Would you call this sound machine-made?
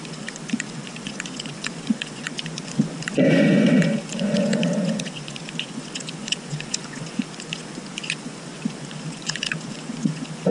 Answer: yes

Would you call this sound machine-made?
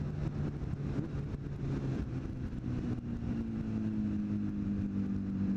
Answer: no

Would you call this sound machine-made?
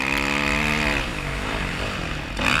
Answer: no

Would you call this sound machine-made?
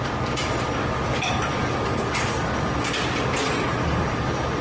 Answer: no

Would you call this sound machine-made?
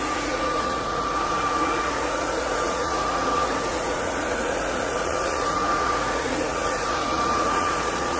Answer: yes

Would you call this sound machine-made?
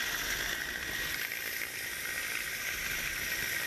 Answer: no